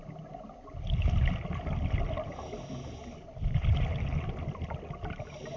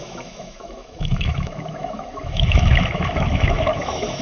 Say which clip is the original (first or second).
first